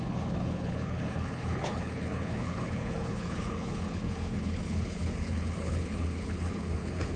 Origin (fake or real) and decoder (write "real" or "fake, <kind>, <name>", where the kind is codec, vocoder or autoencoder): fake, codec, HILCodec